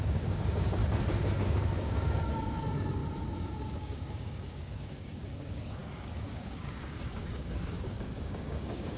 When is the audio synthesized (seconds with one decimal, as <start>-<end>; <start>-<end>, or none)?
0.0-0.8; 1.4-3.0; 3.6-9.0